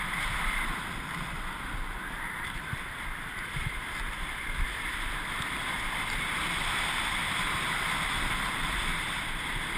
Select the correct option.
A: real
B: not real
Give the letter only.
B